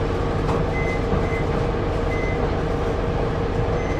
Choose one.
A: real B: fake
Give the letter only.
A